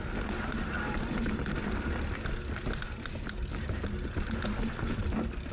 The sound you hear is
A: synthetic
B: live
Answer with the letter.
B